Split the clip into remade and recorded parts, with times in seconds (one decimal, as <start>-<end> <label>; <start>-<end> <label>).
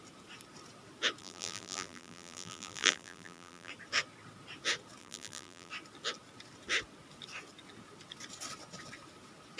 0.0-1.2 recorded; 1.2-3.7 remade; 3.7-5.0 recorded; 5.0-5.7 remade; 5.7-9.6 recorded